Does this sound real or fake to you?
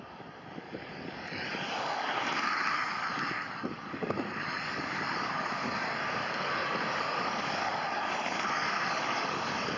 fake